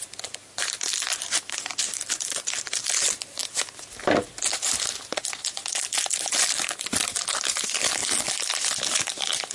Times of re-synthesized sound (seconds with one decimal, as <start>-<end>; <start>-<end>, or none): 0.0-3.4; 4.0-8.0; 9.0-9.5